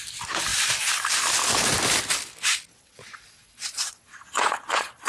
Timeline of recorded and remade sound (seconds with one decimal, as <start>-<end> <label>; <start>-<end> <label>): 0.0-2.7 recorded; 2.7-5.1 remade